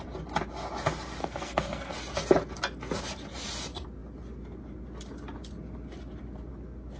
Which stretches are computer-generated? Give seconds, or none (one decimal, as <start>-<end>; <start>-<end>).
1.2-1.9